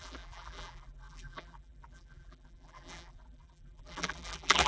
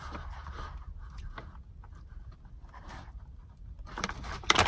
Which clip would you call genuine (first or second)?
second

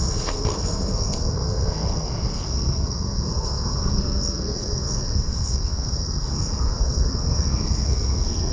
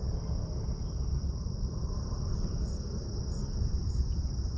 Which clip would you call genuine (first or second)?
second